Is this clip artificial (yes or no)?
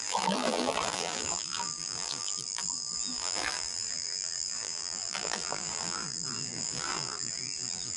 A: yes